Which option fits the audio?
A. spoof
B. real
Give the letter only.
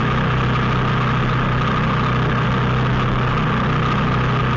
B